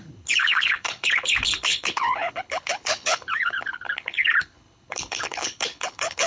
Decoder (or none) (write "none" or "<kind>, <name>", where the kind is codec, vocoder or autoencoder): codec, HILCodec